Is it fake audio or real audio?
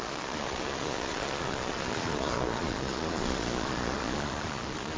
fake